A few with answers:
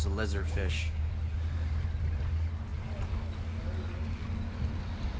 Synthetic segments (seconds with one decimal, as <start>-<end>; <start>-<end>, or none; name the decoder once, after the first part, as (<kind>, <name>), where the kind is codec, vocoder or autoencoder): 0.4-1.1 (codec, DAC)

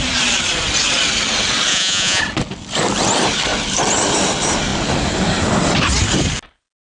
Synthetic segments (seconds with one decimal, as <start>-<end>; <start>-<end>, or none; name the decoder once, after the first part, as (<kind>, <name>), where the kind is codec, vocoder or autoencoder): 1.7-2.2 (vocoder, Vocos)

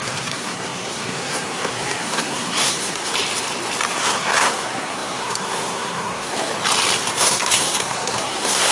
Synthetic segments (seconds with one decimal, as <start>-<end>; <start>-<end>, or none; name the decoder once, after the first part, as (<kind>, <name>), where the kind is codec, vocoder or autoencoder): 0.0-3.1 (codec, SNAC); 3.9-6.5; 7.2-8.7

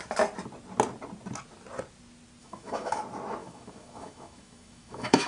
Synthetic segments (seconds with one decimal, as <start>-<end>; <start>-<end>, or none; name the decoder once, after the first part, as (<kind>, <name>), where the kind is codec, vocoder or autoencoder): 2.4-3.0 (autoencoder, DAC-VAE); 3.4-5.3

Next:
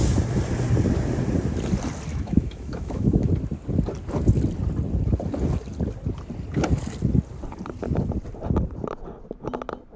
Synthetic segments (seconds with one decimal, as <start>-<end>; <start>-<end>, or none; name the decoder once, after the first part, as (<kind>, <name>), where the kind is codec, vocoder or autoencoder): 2.1-3.3 (autoencoder, DAC-VAE)